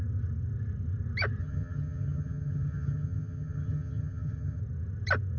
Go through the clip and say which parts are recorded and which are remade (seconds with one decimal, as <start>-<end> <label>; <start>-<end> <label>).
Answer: 0.0-1.4 recorded; 1.4-4.6 remade; 4.6-5.4 recorded